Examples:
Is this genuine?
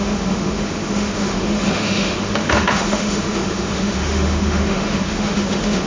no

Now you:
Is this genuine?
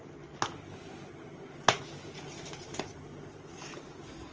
yes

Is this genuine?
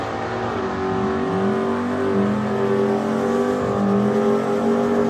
yes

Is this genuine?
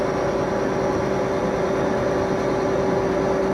yes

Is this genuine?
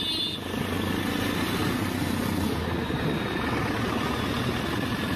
yes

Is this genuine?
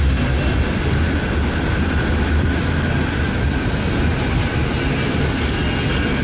yes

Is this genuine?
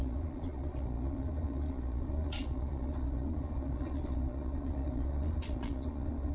no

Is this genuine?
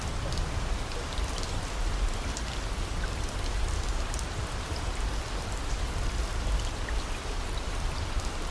yes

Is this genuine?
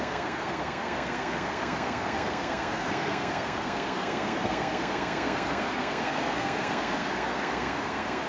no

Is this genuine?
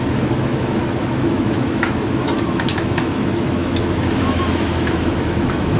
no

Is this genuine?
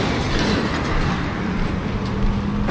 yes